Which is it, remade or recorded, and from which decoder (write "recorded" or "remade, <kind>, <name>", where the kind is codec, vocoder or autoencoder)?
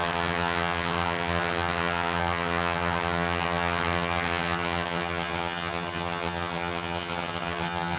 remade, vocoder, HiFi-GAN